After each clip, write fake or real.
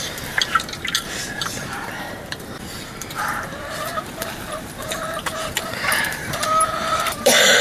fake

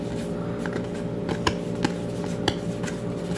real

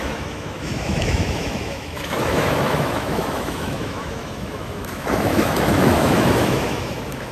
fake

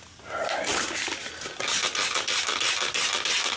real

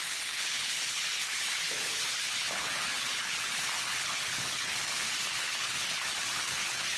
fake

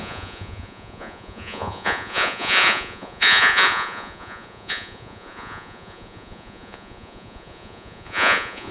fake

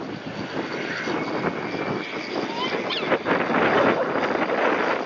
real